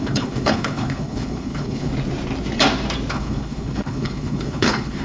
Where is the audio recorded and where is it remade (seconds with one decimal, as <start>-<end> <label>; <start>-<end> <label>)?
0.0-1.9 remade; 1.9-3.1 recorded; 3.1-5.0 remade